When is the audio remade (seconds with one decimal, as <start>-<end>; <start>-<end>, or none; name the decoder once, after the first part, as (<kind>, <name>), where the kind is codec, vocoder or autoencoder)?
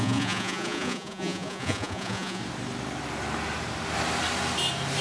0.0-2.4 (vocoder, Vocos)